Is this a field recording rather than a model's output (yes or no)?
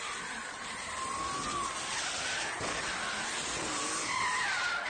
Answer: yes